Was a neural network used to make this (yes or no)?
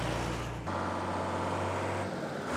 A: no